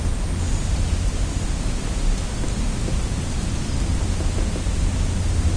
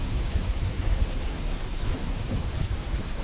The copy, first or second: second